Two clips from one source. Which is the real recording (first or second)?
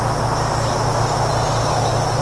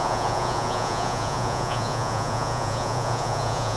first